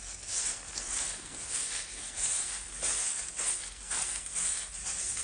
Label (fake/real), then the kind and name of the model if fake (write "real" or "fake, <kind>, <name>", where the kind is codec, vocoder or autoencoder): fake, codec, SNAC